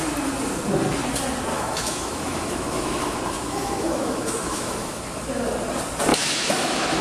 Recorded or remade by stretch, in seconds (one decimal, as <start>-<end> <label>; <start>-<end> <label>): 0.0-1.5 recorded; 1.5-5.0 remade; 5.0-6.1 recorded; 6.1-7.0 remade